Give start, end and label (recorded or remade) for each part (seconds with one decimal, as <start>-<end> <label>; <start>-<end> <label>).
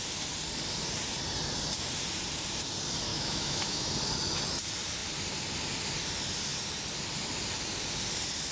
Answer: 0.0-3.1 recorded; 3.1-3.9 remade; 3.9-8.5 recorded